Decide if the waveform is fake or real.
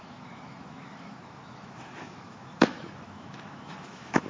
fake